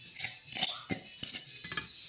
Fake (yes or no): no